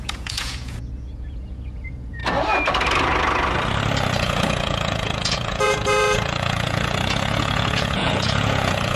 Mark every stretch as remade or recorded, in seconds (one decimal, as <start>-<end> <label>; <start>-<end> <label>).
0.0-2.2 remade; 2.2-4.2 recorded; 4.2-9.0 remade